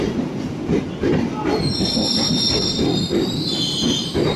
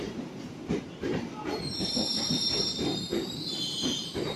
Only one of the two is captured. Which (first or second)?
first